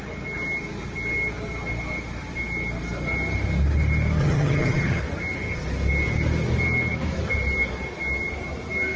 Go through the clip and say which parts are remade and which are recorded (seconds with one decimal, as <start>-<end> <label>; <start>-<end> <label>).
0.0-4.2 recorded; 4.2-5.0 remade; 5.0-9.0 recorded